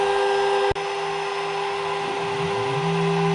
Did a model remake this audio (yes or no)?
no